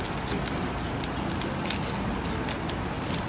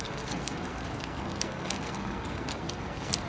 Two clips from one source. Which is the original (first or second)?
first